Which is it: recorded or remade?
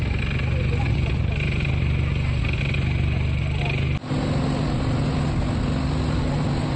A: recorded